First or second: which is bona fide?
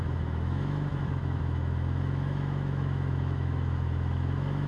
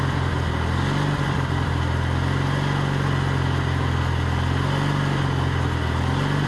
second